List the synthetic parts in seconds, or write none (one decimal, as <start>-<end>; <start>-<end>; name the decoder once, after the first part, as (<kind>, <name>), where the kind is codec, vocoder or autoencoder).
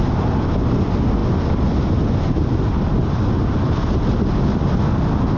none